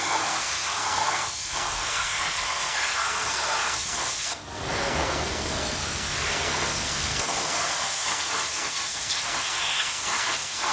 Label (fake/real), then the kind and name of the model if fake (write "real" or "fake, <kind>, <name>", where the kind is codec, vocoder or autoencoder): fake, codec, SNAC